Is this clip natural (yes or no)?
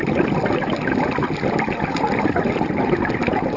yes